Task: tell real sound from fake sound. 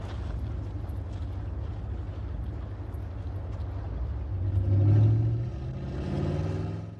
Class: real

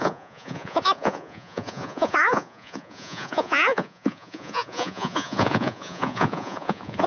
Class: fake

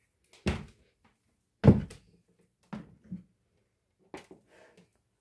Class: real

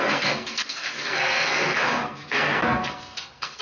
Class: fake